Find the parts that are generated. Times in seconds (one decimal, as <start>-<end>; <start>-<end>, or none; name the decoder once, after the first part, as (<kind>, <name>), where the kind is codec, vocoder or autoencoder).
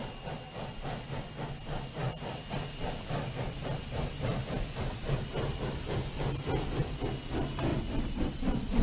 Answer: 2.0-5.2 (vocoder, BigVGAN v2); 7.7-8.3